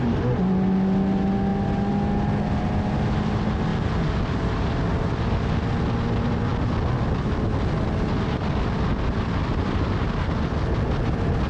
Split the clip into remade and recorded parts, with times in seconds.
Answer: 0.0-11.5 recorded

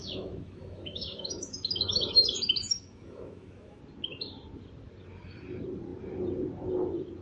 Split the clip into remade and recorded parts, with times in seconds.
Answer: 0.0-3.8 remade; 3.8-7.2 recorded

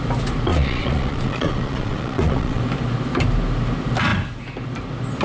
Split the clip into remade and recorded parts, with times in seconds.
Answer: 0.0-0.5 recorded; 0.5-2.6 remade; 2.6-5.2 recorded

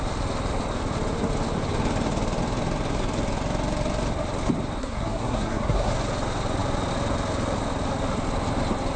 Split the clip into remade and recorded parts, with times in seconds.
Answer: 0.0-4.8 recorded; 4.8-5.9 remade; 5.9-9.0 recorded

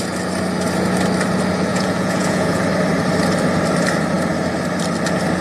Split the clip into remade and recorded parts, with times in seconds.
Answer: 0.0-1.7 recorded; 1.7-2.6 remade; 2.6-5.4 recorded

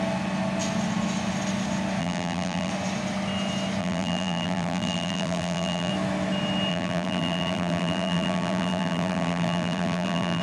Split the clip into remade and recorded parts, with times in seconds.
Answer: 0.0-2.0 recorded; 2.0-2.7 remade; 2.7-3.8 recorded; 3.8-5.9 remade; 5.9-6.7 recorded; 6.7-10.4 remade

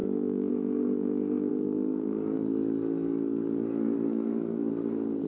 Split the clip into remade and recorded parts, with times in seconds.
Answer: 0.0-0.5 remade; 0.5-1.5 recorded; 1.5-4.7 remade; 4.7-5.3 recorded